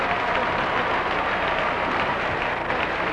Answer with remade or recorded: recorded